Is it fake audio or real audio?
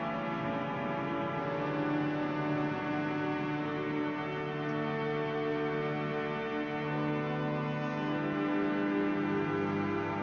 real